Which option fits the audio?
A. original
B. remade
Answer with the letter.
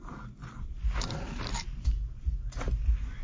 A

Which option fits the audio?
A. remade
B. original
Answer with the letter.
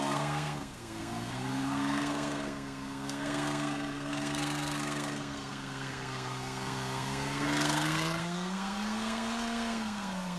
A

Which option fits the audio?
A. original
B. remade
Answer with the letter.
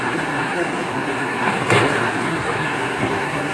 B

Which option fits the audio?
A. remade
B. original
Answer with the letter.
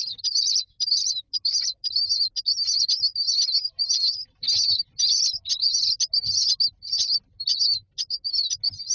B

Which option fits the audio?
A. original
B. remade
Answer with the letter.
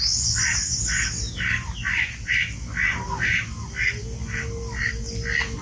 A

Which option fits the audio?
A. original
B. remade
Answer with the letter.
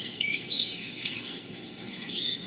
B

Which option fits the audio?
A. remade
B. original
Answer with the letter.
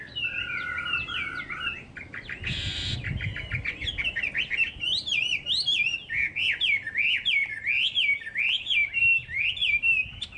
B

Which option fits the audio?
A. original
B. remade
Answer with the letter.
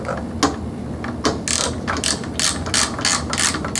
A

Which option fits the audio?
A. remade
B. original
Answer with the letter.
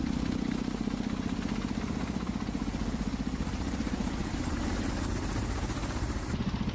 B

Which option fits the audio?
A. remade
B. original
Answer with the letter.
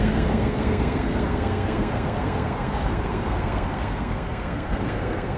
A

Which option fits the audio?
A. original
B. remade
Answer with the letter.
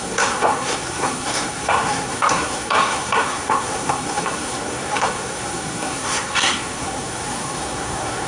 B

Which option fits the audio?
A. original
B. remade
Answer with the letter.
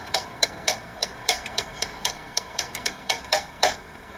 B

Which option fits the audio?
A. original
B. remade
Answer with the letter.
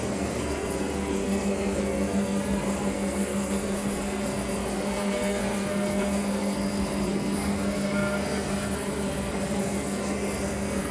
B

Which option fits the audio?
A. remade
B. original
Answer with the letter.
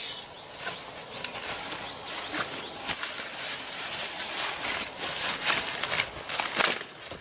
B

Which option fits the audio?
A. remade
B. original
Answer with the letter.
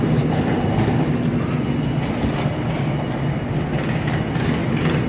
B